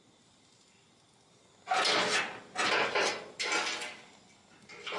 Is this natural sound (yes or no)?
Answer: yes